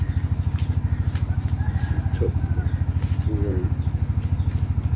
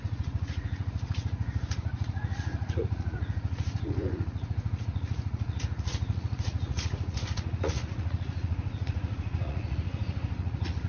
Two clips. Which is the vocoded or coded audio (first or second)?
second